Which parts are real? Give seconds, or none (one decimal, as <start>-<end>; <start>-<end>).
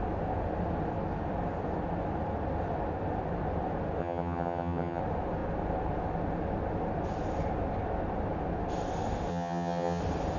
0.0-4.0; 5.0-9.3; 10.0-10.4